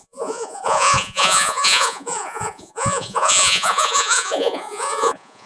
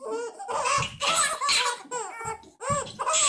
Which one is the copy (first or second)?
first